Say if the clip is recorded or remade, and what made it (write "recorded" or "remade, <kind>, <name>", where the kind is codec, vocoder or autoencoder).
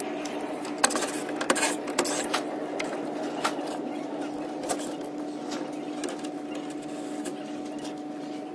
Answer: recorded